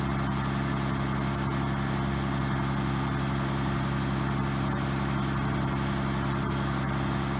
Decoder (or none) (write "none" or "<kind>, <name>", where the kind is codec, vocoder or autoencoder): none